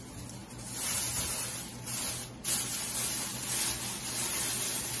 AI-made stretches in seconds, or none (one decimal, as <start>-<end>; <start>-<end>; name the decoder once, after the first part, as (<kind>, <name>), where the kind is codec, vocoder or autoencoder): none